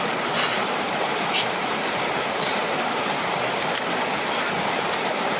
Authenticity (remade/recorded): recorded